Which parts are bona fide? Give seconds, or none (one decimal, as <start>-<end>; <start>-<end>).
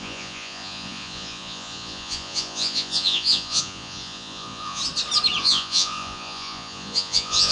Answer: 4.8-5.4